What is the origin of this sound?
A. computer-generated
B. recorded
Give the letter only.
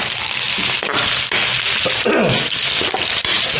B